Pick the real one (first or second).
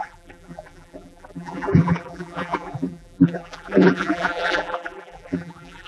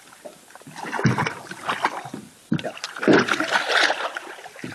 second